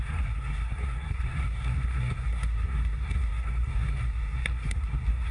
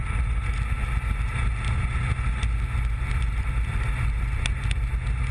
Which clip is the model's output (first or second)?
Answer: first